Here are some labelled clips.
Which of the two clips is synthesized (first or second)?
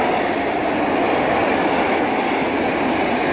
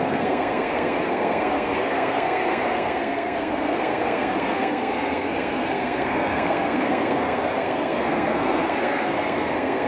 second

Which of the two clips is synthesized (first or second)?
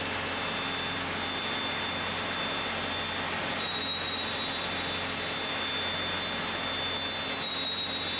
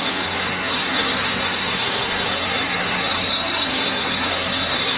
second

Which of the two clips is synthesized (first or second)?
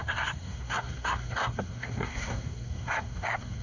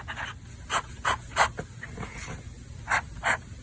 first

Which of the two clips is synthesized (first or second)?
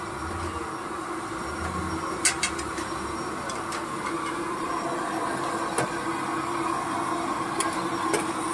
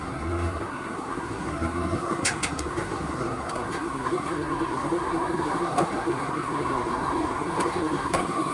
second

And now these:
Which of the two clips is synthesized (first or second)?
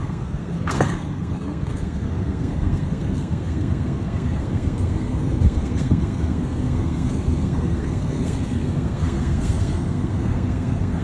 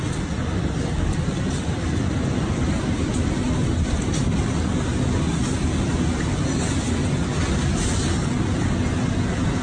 first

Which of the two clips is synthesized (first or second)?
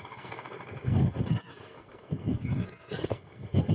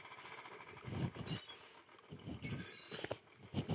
first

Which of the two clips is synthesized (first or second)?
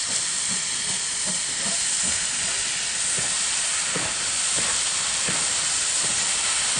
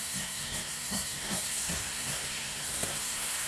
second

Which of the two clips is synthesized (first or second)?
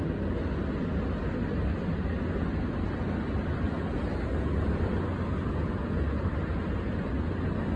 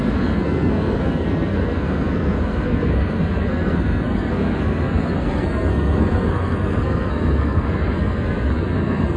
second